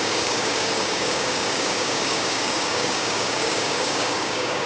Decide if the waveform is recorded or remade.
remade